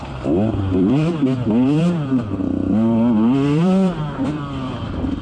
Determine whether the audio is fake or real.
fake